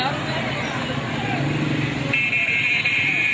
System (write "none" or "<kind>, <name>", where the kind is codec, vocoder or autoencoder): none